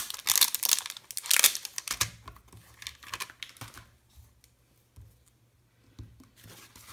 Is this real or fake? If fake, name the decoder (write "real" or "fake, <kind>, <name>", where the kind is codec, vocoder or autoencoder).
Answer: real